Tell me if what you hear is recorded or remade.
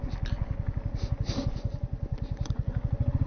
recorded